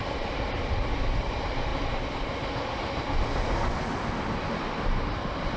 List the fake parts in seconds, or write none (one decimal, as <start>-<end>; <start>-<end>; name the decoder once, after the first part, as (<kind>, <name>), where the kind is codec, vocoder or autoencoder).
0.0-1.7 (vocoder, BigVGAN v2); 4.4-5.6